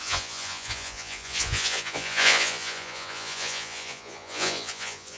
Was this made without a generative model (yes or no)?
no